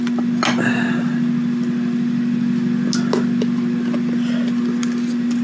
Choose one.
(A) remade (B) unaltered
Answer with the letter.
B